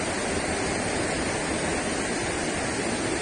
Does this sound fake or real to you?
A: real